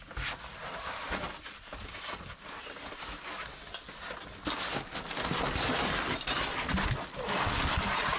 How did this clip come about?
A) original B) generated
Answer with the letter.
A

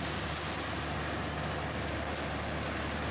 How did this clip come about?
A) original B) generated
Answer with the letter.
A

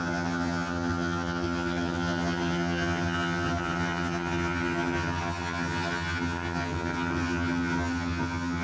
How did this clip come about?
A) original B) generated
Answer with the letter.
B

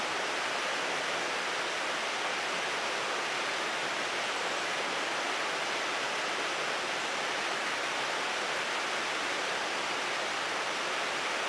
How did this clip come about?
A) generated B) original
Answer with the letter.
B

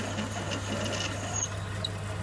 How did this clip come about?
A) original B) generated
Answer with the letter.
A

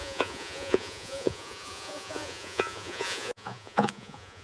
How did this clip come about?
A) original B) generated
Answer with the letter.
B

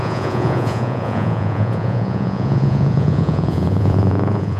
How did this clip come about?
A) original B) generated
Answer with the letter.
B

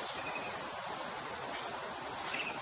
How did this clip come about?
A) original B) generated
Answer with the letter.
A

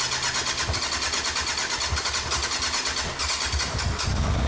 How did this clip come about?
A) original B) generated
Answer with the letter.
A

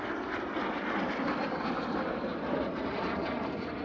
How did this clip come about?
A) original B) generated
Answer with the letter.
A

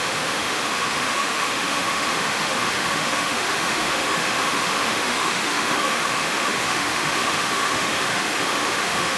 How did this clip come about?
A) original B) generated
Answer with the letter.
B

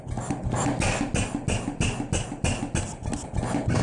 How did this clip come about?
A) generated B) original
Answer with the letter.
B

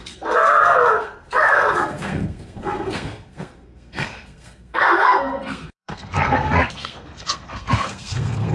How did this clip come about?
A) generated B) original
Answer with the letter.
A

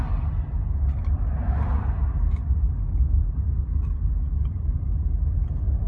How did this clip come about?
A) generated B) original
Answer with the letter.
B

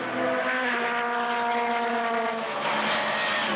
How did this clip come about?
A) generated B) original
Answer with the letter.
B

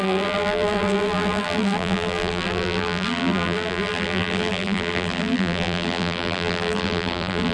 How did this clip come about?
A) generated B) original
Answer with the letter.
A